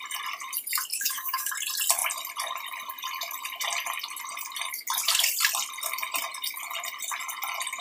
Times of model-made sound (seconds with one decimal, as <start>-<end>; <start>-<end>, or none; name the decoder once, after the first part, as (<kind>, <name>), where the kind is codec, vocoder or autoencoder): 0.9-1.5 (autoencoder, DAC-VAE)